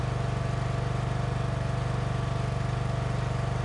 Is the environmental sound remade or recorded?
recorded